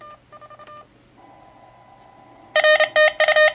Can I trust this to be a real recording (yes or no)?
yes